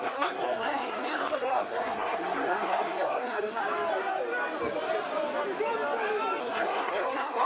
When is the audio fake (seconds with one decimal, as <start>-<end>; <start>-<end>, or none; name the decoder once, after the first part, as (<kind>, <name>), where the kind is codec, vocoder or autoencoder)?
0.0-3.6 (codec, SNAC); 6.4-7.5